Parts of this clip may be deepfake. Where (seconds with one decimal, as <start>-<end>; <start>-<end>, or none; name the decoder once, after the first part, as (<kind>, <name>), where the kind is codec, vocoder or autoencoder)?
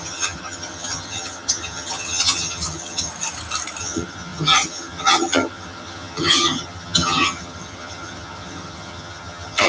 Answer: 0.0-3.1 (vocoder, HiFi-GAN); 3.8-9.7